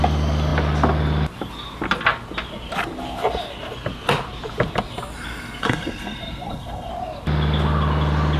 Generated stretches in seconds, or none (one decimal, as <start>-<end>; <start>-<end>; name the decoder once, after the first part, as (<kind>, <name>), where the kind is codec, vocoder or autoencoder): 5.6-6.9 (codec, SNAC)

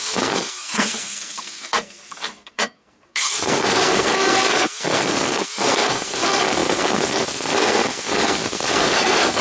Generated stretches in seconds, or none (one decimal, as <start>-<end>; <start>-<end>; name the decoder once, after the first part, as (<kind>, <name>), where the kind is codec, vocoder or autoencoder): 0.0-9.4 (codec, SNAC)

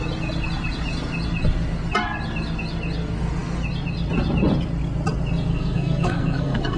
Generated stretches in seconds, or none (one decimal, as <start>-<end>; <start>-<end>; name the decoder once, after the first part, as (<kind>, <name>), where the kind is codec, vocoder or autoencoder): 5.5-6.8 (codec, SNAC)

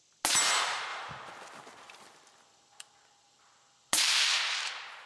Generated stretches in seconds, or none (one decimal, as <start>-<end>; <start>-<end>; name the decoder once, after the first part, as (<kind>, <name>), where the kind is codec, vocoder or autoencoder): none

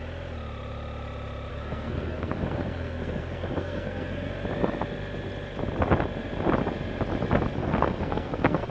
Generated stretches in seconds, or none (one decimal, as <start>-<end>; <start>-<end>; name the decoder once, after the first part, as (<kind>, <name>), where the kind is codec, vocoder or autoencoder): 1.5-4.3 (codec, SNAC); 7.6-8.7

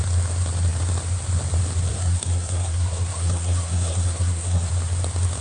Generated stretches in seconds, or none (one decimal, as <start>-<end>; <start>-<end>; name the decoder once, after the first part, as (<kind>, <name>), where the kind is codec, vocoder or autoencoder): 1.9-4.7 (codec, SNAC)

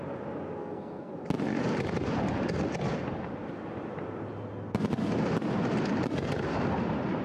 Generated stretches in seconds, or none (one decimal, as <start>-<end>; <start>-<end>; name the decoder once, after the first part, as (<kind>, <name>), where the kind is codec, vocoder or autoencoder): 0.6-1.1 (codec, SNAC)

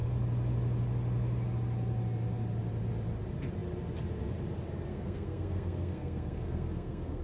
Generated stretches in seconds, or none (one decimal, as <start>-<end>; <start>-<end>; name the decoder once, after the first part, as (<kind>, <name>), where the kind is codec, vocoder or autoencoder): 4.9-7.2 (codec, SNAC)